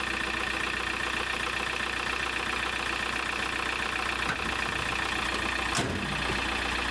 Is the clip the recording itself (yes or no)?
yes